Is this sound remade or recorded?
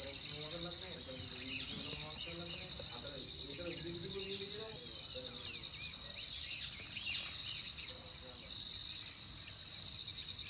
recorded